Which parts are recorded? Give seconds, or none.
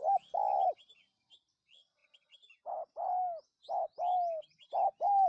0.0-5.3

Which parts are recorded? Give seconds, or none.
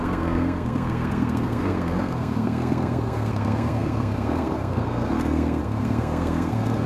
none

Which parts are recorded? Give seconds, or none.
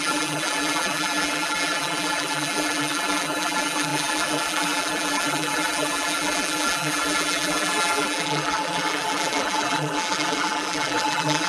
none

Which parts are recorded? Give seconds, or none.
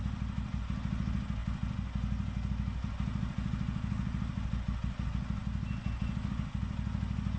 0.0-7.4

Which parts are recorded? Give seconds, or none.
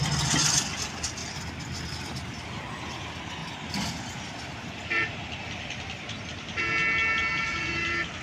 1.2-2.9; 3.4-4.0; 6.8-7.4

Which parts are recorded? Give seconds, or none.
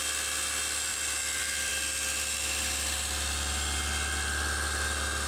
0.0-0.9; 1.7-5.3